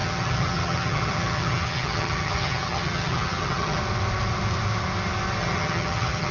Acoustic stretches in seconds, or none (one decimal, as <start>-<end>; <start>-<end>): 3.8-5.4